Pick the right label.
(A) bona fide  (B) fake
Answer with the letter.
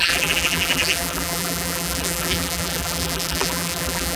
B